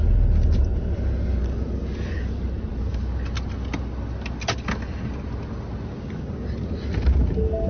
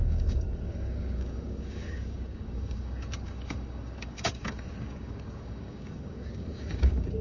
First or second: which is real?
first